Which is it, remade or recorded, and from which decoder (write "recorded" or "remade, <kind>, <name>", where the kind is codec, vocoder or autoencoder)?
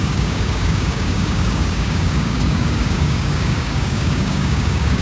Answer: remade, codec, DAC